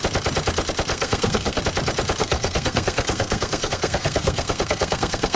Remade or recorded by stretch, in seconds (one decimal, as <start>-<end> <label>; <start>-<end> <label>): 0.0-0.9 recorded; 0.9-1.6 remade; 1.6-2.2 recorded; 2.2-5.4 remade